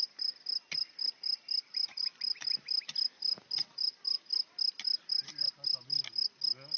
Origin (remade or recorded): recorded